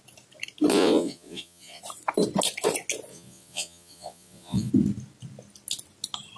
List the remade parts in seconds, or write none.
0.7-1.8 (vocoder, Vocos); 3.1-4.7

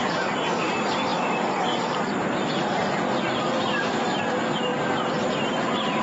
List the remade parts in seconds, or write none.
0.0-4.7 (vocoder, BigVGAN v2); 5.3-6.0